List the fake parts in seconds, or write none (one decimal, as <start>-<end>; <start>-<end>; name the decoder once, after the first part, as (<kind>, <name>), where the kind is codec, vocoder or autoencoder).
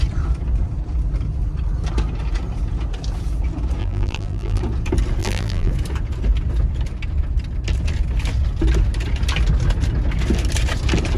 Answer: 3.8-4.6 (vocoder, BigVGAN v2); 5.2-5.7